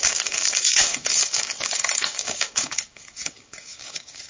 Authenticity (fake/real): fake